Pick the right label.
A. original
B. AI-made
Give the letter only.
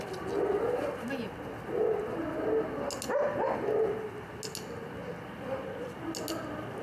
A